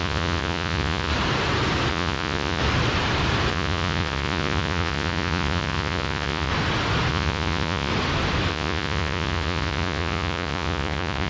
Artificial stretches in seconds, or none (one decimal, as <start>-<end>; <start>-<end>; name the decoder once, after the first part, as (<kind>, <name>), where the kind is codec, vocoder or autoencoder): 0.0-1.1 (vocoder, Vocos); 1.9-2.6; 3.5-6.5; 7.1-7.9; 8.5-11.3